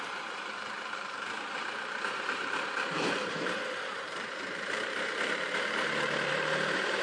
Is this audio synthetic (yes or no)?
yes